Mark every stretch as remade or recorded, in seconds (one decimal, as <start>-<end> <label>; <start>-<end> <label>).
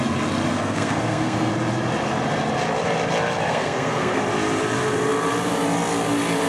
0.0-0.5 recorded; 0.5-1.5 remade; 1.5-3.5 recorded; 3.5-4.2 remade; 4.2-6.5 recorded